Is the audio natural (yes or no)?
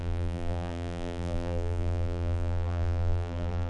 no